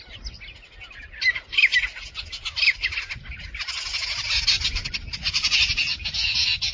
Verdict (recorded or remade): recorded